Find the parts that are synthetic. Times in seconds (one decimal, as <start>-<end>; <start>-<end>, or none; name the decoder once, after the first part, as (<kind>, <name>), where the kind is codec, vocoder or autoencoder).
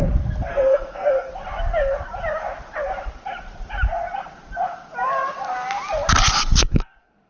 0.5-1.3 (codec, SNAC); 6.6-7.3